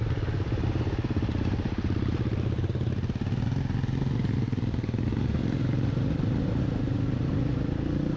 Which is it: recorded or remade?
recorded